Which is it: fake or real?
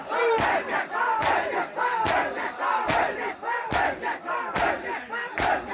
real